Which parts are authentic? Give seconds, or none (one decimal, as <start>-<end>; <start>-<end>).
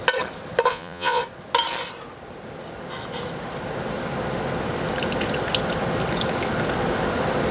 0.0-0.7; 1.2-7.5